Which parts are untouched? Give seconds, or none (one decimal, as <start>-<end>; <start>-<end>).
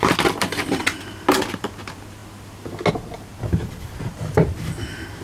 2.2-2.9; 3.3-4.0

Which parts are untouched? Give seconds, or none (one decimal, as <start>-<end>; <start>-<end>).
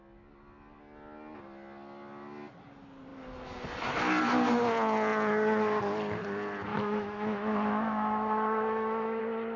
0.0-6.7; 9.2-9.6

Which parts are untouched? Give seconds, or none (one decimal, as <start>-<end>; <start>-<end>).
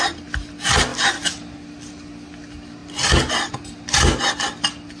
0.0-5.0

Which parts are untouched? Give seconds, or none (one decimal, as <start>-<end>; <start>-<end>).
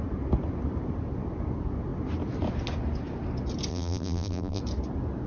0.0-3.7; 4.6-5.3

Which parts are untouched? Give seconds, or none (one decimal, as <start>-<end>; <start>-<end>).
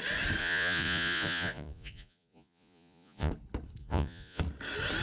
0.0-0.4; 3.3-3.8; 4.4-5.0